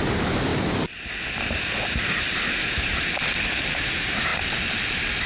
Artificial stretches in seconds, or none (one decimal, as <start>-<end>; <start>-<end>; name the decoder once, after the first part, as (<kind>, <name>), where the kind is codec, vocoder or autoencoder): 4.3-5.3 (vocoder, BigVGAN v2)